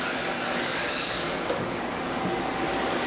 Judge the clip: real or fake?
fake